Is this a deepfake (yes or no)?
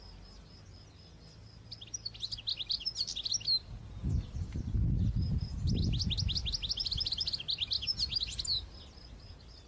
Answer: no